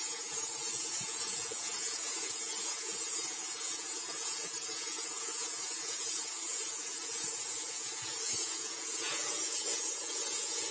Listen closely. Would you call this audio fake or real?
fake